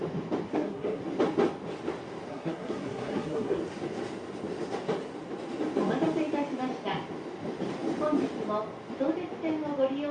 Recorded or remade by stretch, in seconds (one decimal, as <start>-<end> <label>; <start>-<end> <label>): 0.0-0.5 recorded; 0.5-1.0 remade; 1.0-2.3 recorded; 2.3-3.6 remade; 3.6-10.1 recorded